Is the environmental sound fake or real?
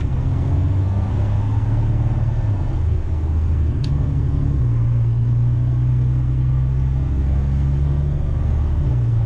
fake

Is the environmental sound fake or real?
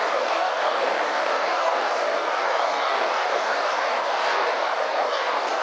fake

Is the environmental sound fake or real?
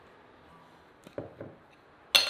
real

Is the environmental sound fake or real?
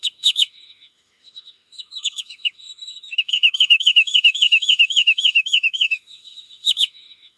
fake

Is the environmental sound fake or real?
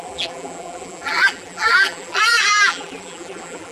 fake